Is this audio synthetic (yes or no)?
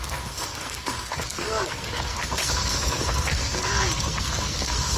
yes